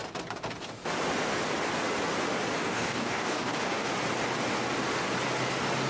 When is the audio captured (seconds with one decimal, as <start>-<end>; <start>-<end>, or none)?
0.0-2.6; 3.9-5.9